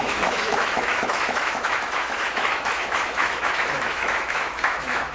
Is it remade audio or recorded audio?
remade